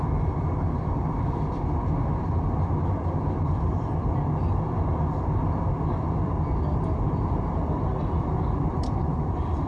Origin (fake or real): fake